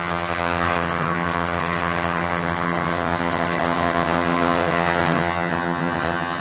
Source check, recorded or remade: remade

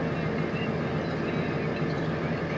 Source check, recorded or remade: recorded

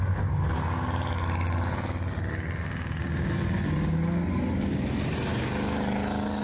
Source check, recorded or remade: recorded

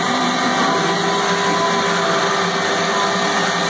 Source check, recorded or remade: recorded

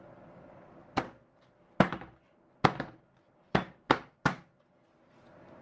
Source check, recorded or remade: recorded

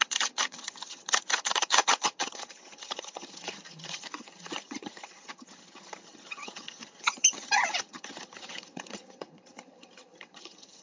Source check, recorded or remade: remade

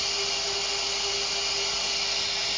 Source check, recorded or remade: recorded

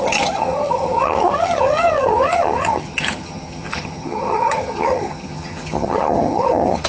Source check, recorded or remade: remade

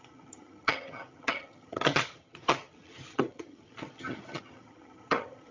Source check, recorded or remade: remade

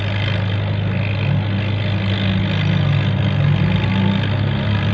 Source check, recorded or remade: recorded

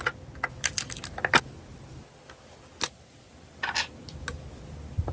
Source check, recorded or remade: recorded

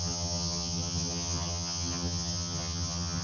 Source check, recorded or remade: remade